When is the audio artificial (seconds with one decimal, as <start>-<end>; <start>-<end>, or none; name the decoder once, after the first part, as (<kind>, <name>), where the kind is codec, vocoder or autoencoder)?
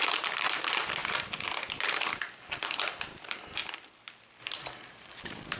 0.0-3.6 (vocoder, BigVGAN v2); 4.4-5.6